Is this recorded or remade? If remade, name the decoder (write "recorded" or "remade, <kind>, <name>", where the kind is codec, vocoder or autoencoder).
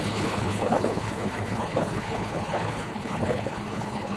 remade, codec, HILCodec